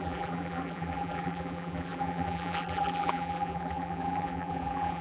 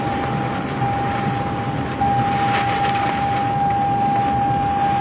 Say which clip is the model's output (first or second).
first